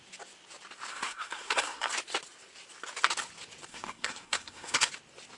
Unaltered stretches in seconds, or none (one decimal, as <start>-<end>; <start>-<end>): 0.0-0.9; 1.9-3.7; 4.9-5.4